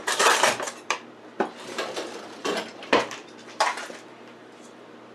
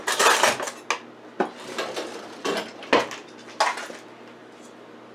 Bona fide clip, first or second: second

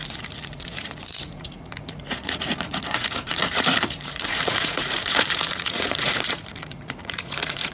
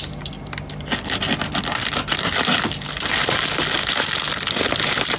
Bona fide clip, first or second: second